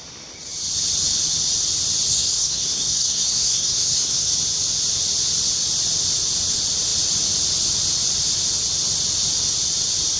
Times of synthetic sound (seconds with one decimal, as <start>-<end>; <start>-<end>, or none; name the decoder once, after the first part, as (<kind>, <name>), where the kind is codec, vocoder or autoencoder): 2.1-4.3 (codec, SNAC)